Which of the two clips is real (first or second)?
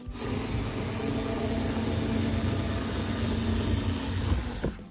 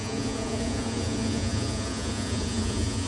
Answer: first